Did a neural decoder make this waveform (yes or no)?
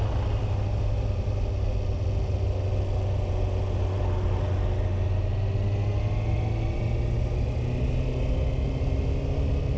no